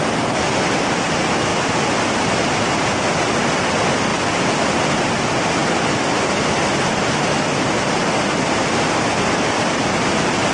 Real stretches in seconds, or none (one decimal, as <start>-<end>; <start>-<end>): 0.0-1.5; 2.8-4.1; 4.7-8.0; 8.7-10.5